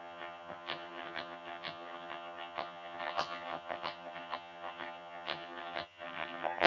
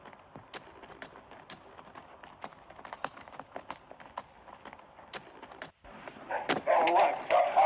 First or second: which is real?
second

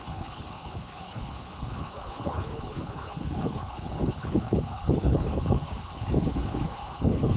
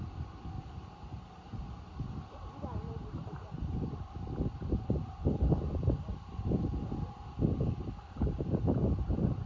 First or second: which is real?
second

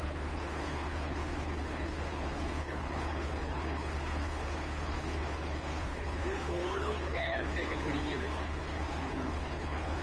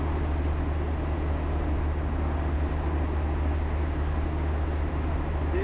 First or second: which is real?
second